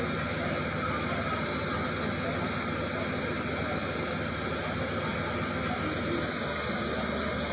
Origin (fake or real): real